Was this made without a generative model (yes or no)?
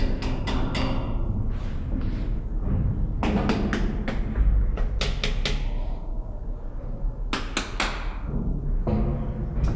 yes